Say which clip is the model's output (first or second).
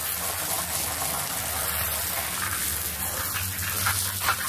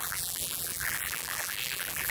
second